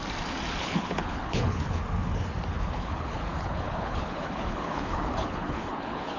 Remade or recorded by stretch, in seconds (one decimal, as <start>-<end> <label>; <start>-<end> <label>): 0.0-0.6 recorded; 0.6-1.8 remade; 1.8-2.5 recorded; 2.5-6.2 remade